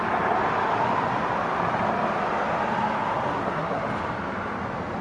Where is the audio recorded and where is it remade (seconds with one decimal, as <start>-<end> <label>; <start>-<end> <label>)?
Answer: 0.0-3.3 recorded; 3.3-3.8 remade; 3.8-5.0 recorded